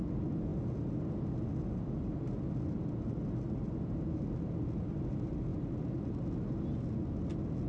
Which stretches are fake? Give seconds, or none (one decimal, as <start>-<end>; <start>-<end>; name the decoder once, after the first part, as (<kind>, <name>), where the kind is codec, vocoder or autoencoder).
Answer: none